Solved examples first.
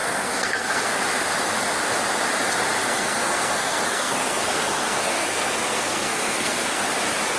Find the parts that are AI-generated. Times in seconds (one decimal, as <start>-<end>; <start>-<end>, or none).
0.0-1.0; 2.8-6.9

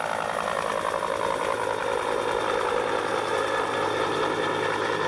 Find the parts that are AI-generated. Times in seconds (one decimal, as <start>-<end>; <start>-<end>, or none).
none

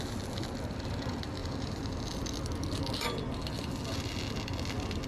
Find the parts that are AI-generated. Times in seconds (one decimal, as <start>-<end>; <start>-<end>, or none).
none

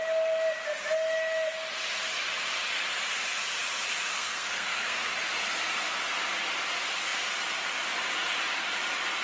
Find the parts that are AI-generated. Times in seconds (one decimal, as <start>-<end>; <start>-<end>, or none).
4.1-5.1